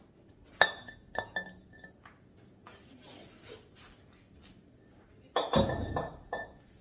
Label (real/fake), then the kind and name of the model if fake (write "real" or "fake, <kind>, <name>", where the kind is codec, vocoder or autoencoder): real